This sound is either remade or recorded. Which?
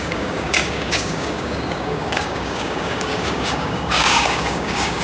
remade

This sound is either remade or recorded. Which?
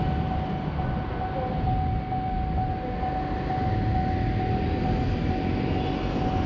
recorded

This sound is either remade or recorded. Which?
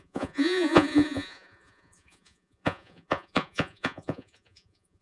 remade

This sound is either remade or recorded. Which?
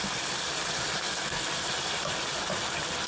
recorded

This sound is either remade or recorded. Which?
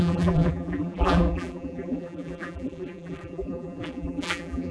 remade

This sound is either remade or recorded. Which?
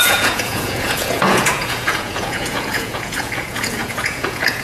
remade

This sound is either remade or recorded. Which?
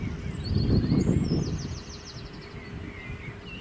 recorded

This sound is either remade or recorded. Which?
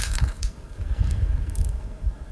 remade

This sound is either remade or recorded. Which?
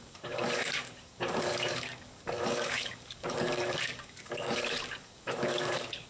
remade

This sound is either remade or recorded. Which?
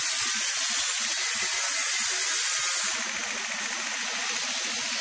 recorded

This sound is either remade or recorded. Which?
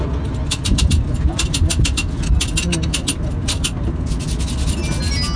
recorded